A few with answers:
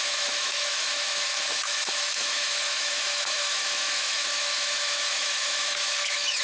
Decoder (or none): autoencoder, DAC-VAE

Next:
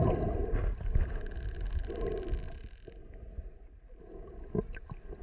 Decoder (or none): none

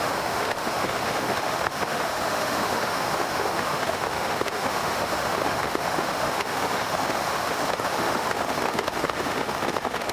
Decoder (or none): autoencoder, DAC-VAE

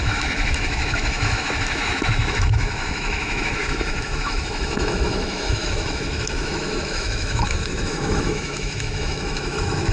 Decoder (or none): autoencoder, DAC-VAE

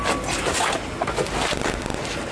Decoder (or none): none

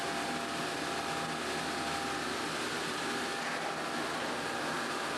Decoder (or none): none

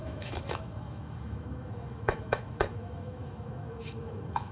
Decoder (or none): autoencoder, DAC-VAE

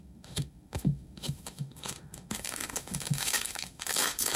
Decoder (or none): autoencoder, DAC-VAE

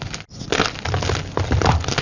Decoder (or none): none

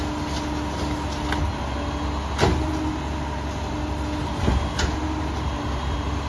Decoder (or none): none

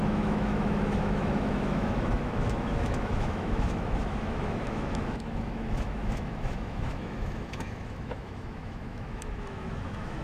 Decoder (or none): autoencoder, DAC-VAE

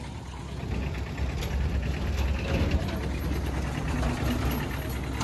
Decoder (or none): none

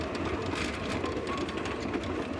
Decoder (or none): none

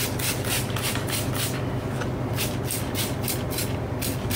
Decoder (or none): none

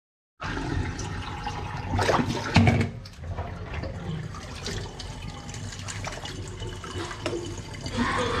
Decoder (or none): none